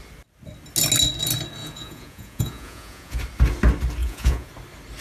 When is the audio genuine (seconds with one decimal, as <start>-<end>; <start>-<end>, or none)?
0.0-1.6; 3.2-4.0; 4.5-5.0